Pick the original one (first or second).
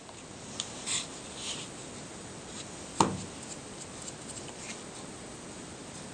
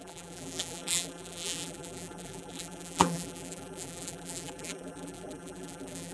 first